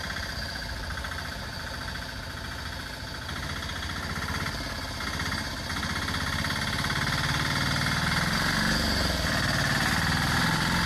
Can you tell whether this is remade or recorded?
recorded